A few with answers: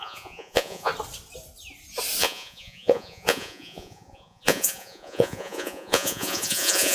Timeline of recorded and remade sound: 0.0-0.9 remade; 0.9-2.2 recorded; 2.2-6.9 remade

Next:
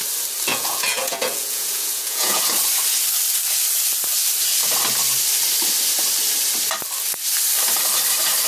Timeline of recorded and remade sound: 0.0-0.5 recorded; 0.5-2.4 remade; 2.4-8.5 recorded

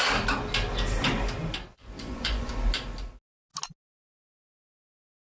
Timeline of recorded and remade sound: 0.0-1.7 recorded; 1.7-2.5 remade; 2.5-5.4 recorded